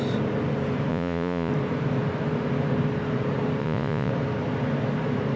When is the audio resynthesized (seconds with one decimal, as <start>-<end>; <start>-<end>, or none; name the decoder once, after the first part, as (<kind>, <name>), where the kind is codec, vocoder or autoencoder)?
0.9-1.5 (vocoder, Vocos); 3.6-4.1